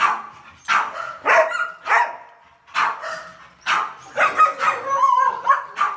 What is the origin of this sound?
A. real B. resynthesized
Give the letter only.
A